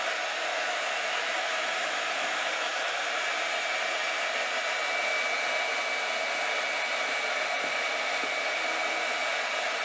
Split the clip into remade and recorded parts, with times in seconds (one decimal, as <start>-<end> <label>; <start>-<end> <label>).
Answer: 0.0-0.5 recorded; 0.5-3.0 remade; 3.0-9.8 recorded